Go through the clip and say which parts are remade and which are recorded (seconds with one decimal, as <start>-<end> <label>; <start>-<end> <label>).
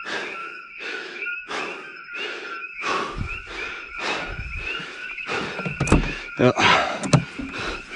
0.0-0.4 recorded; 0.4-1.6 remade; 1.6-2.6 recorded; 2.6-3.2 remade; 3.2-4.8 recorded; 4.8-5.4 remade; 5.4-8.0 recorded